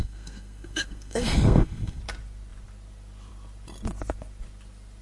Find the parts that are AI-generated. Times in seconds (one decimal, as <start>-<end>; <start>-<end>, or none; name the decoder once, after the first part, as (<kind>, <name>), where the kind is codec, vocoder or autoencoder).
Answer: 0.0-2.0 (codec, SNAC)